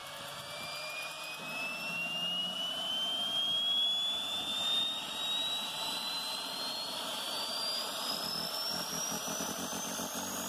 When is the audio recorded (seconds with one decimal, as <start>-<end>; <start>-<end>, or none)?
1.3-2.4; 2.9-4.5; 8.1-10.5